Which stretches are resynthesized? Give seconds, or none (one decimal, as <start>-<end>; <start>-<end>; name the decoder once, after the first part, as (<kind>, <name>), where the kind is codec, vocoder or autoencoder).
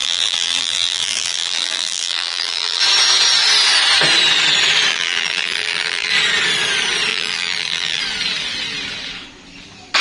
0.0-2.8 (vocoder, BigVGAN v2); 4.9-6.1; 7.1-8.0